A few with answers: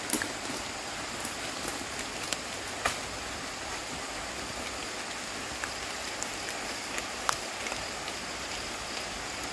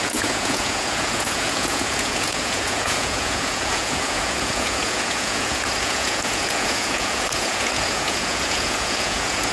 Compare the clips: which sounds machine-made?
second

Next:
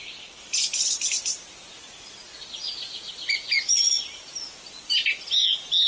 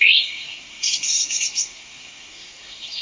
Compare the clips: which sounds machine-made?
second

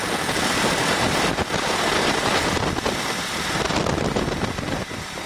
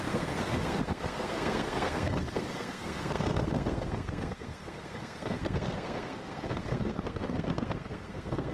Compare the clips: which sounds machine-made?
second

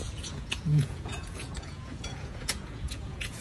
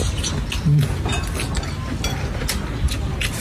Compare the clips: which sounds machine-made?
first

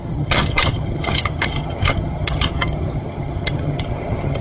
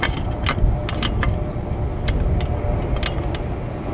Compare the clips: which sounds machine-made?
first